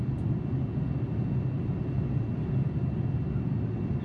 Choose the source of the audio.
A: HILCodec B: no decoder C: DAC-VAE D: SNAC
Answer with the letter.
B